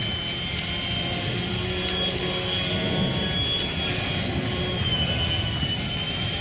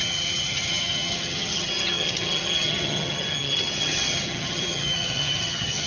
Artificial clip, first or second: second